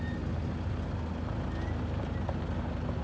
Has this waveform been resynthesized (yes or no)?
no